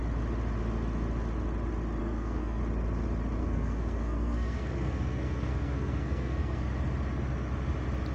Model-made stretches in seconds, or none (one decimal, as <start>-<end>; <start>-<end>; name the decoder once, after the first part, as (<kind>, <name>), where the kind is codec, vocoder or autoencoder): 2.0-2.6 (codec, SNAC); 3.4-6.7